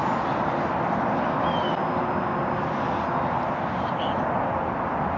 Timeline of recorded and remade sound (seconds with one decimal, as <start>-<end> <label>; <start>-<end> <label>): 0.0-5.2 recorded